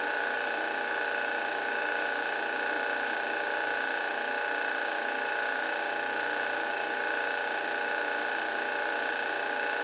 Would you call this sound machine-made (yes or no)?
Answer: no